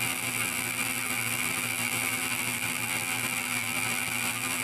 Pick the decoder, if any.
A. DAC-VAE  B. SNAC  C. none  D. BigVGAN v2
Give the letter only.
D